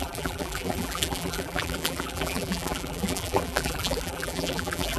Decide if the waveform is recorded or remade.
remade